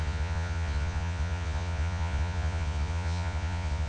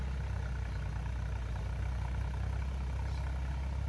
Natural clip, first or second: second